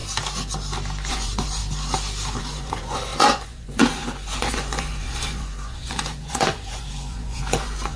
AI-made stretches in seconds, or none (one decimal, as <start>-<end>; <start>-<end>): 1.1-1.6; 2.4-8.0